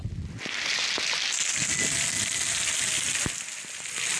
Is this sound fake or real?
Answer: real